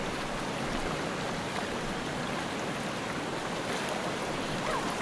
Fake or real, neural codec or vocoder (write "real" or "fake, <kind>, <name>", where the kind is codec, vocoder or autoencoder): real